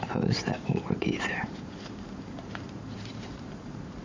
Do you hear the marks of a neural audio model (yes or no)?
yes